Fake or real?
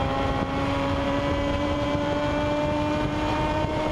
fake